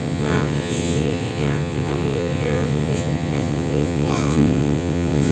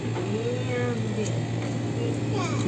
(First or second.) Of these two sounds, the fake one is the first